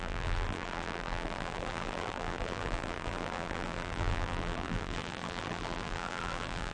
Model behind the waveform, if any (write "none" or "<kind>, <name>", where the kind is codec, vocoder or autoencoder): vocoder, BigVGAN v2